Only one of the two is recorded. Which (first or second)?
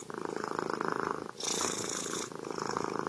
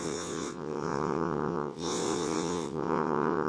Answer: first